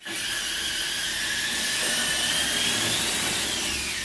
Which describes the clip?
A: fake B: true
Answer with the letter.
B